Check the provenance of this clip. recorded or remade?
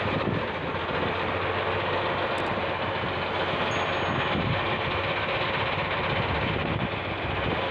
recorded